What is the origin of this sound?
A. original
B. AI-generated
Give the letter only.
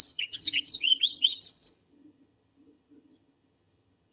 B